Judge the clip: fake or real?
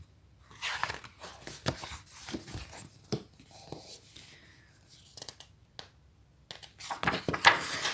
real